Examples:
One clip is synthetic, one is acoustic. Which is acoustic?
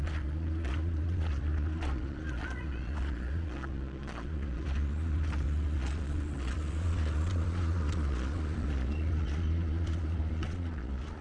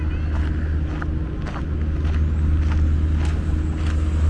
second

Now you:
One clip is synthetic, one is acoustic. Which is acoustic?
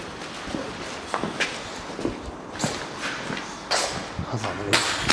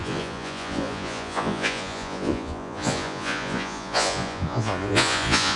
first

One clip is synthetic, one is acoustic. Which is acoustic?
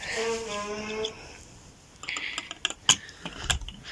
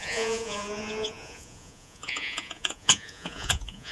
first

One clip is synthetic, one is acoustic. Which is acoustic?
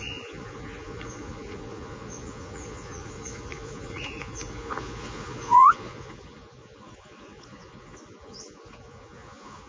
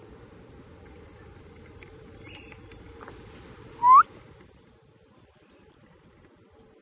second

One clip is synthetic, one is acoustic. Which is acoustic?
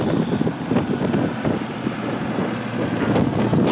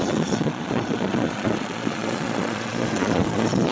first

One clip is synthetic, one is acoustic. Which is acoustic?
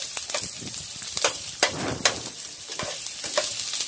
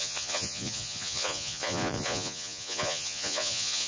first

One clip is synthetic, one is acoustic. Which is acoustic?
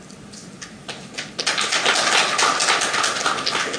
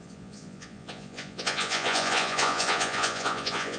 first